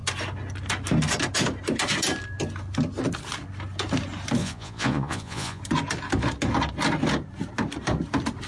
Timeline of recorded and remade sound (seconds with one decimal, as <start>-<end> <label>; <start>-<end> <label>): 0.0-4.4 recorded; 4.4-5.6 remade; 5.6-8.5 recorded